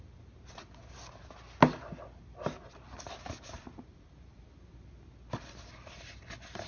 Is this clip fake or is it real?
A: real